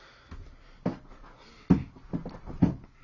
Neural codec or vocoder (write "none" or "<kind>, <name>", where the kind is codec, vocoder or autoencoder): none